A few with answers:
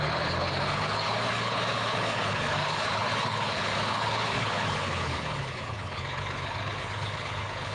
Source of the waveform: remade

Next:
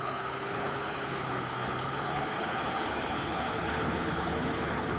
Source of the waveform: remade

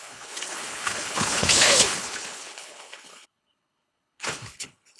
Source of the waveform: remade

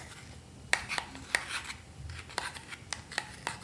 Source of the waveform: recorded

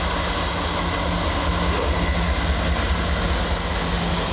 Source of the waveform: recorded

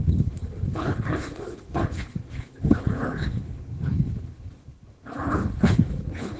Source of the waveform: remade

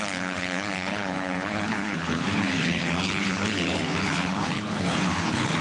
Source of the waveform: remade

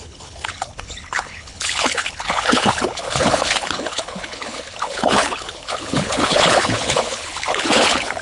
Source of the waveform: remade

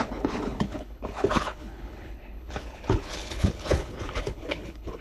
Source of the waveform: remade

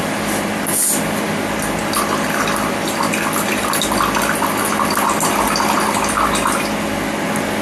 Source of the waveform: recorded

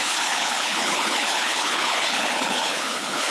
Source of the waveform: remade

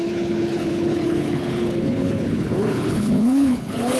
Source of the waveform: remade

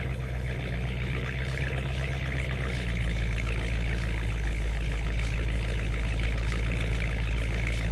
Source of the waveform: remade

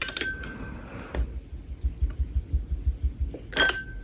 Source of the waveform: recorded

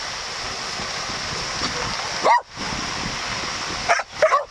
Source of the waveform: recorded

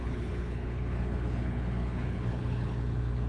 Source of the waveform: remade